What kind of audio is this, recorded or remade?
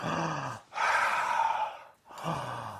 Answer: recorded